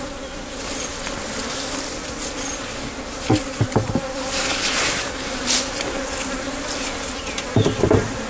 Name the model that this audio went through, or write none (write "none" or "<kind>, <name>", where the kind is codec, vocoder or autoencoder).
none